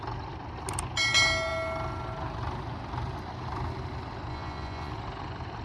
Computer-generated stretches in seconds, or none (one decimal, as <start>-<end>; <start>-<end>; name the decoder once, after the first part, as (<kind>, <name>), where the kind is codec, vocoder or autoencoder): 4.3-4.9 (vocoder, Vocos)